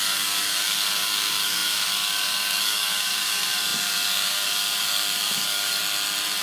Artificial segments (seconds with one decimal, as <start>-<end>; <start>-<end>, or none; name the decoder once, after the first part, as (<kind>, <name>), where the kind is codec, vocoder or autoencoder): 0.0-5.8 (codec, DAC)